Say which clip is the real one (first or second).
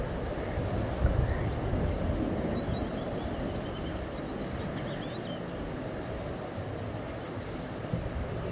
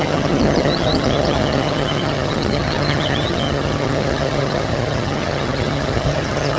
first